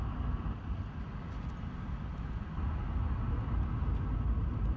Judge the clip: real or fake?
real